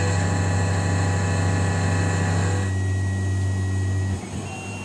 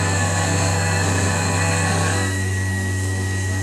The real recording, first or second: first